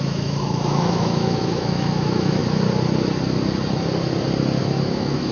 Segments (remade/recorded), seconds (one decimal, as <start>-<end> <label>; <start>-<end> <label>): 0.0-2.4 remade; 2.4-4.6 recorded; 4.6-5.3 remade